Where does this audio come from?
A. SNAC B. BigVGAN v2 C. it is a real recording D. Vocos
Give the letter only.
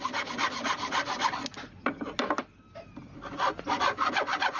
C